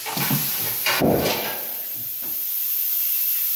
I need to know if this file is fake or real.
real